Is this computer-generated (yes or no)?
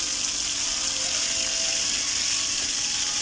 no